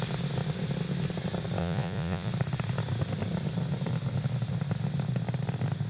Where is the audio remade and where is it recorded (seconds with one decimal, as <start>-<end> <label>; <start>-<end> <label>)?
0.0-1.6 recorded; 1.6-2.3 remade; 2.3-5.9 recorded